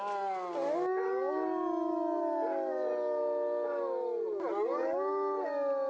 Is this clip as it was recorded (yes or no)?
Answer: yes